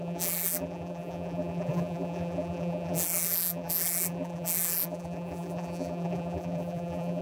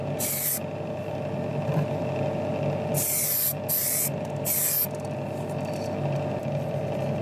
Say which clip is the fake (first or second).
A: first